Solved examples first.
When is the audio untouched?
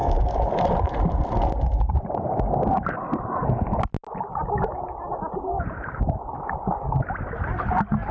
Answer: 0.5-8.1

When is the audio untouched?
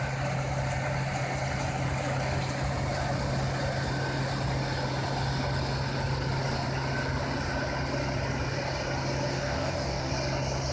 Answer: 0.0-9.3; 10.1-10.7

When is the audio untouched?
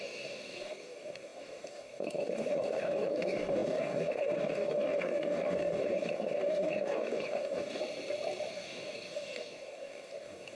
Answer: 7.8-8.5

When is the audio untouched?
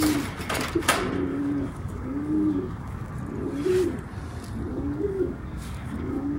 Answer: 0.0-1.3; 3.1-4.7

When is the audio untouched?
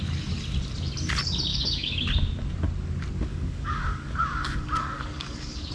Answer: 0.0-1.5; 2.1-3.3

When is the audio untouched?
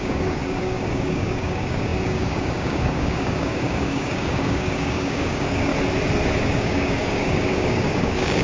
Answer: 5.7-6.4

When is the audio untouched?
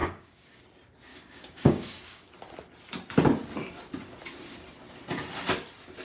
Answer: 0.6-1.1; 2.3-6.0